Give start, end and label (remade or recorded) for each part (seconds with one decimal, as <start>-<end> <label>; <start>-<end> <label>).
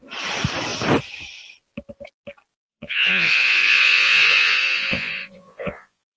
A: 0.0-2.5 recorded; 2.5-6.2 remade